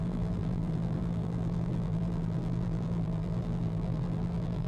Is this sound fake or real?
fake